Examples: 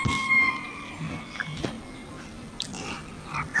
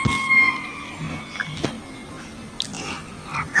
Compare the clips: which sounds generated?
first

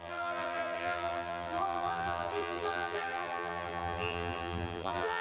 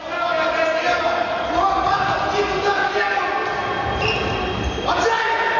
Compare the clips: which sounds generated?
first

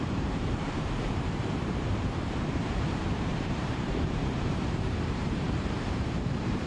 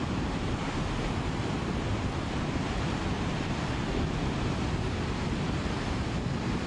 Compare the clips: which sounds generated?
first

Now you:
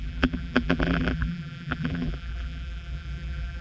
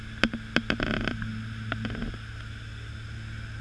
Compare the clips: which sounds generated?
first